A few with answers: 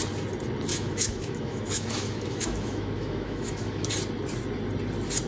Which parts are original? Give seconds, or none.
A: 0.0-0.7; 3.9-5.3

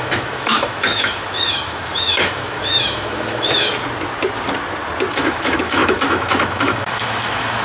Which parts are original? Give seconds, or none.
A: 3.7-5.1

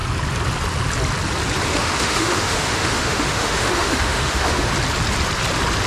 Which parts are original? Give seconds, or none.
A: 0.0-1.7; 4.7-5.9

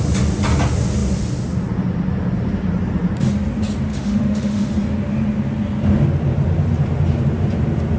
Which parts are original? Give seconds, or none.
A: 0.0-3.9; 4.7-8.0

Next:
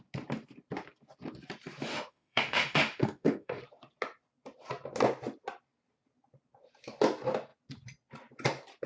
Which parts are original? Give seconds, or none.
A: 0.0-1.9; 3.6-8.9

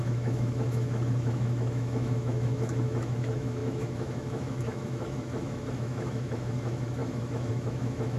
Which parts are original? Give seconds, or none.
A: none